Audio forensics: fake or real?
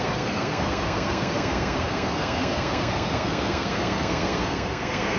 fake